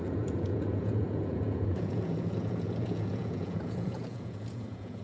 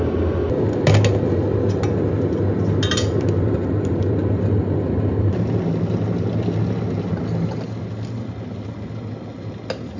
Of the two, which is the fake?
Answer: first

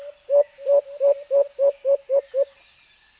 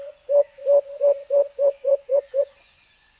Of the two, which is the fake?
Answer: second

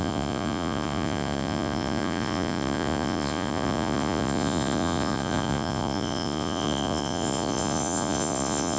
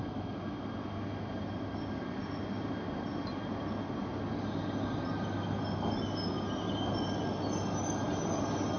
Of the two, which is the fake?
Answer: first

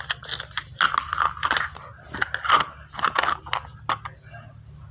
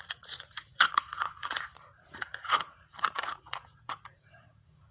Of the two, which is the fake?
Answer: second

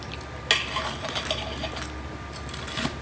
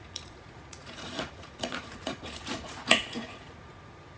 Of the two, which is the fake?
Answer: second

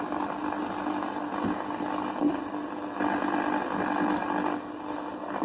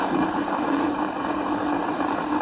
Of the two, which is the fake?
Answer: second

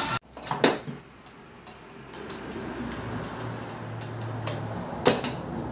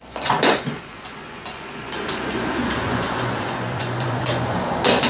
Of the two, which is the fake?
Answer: second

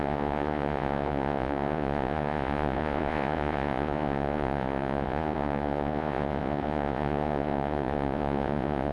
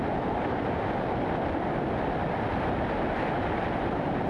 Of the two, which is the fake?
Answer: first